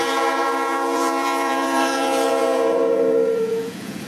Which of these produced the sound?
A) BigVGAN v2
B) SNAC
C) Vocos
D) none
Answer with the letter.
C